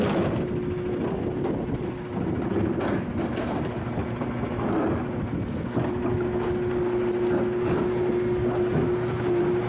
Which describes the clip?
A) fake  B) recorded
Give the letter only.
B